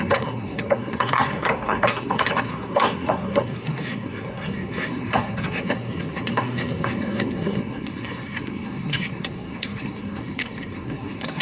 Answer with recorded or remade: remade